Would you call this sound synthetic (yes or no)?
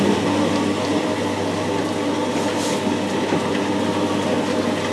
no